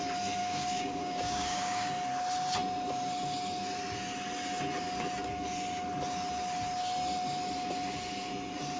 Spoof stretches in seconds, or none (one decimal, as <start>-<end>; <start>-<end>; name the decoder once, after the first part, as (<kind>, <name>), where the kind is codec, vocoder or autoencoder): 0.4-1.9 (codec, DAC)